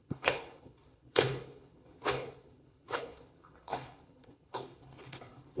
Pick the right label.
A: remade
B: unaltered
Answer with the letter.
A